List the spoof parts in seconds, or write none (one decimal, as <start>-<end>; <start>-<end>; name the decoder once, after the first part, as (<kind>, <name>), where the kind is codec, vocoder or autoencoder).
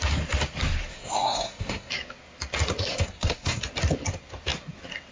0.9-1.9 (codec, SNAC); 2.9-3.6